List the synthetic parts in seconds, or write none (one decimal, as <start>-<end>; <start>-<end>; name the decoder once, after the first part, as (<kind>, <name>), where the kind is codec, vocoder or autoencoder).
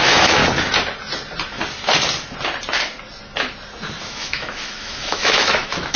0.0-0.4 (autoencoder, DAC-VAE); 4.0-6.0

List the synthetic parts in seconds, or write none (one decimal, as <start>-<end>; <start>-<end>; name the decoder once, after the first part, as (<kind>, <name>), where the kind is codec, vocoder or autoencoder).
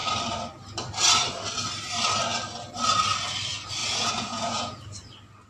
3.8-4.8 (vocoder, Vocos)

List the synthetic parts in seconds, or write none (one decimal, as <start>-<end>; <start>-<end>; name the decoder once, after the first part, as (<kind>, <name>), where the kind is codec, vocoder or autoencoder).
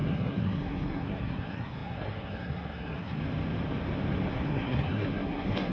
0.0-3.2 (codec, SNAC); 4.3-5.7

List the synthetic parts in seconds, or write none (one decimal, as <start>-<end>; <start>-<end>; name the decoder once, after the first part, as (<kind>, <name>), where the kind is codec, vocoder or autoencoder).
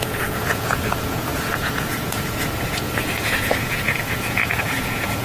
0.0-5.2 (vocoder, Vocos)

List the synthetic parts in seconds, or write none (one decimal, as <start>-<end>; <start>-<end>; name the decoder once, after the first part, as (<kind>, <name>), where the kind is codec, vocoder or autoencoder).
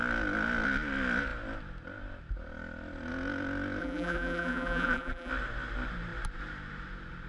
3.8-5.3 (vocoder, BigVGAN v2)